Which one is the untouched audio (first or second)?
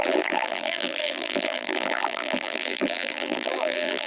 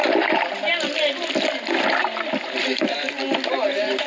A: second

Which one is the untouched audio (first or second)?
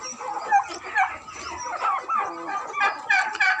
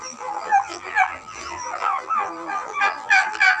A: first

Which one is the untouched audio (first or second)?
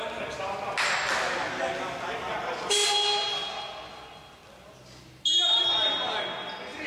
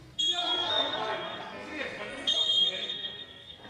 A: first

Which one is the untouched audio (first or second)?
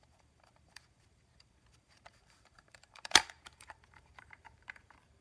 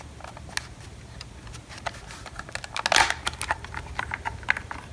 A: second